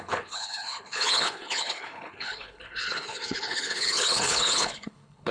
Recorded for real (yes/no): no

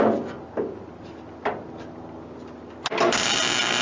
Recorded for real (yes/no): yes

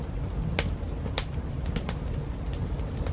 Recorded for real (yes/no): yes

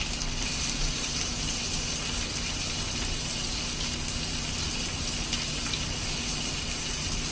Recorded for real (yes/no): yes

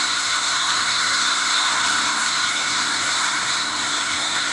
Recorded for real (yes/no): no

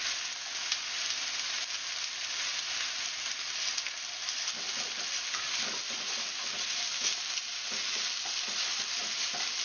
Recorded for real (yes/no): yes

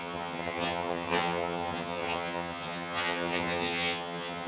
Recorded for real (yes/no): no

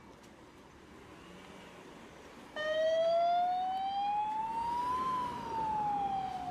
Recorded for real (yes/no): yes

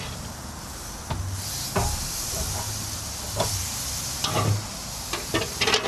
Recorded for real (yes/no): yes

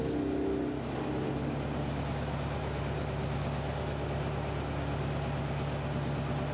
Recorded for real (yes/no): yes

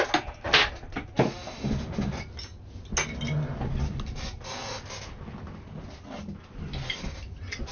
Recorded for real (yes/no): yes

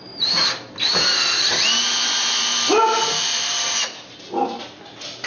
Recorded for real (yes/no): yes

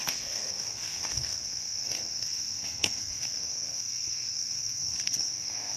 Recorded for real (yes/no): no